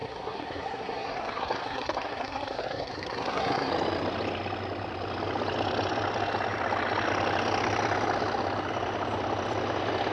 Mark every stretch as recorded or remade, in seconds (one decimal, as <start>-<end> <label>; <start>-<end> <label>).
0.0-3.7 remade; 3.7-10.1 recorded